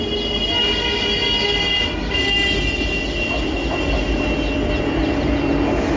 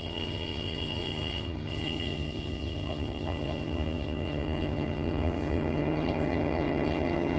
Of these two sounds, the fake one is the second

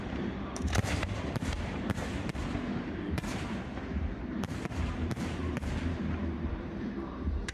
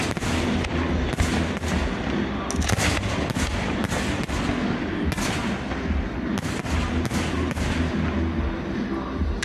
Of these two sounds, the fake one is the first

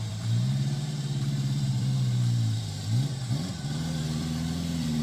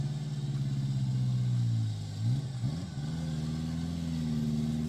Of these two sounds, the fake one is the first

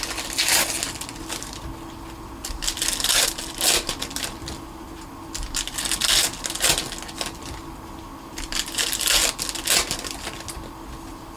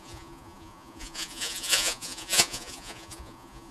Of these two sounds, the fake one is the second